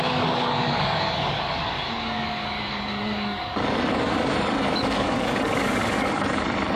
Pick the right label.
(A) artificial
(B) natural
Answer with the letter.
A